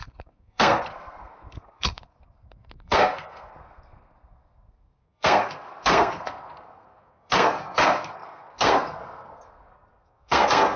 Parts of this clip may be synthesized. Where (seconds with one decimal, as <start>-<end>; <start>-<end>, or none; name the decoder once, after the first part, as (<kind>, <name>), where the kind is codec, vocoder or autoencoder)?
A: 0.0-10.8 (codec, SNAC)